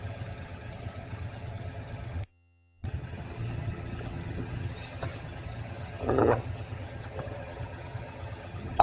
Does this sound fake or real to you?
fake